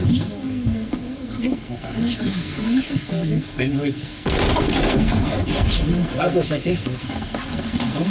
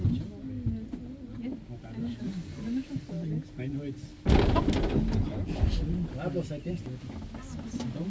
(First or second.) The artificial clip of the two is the first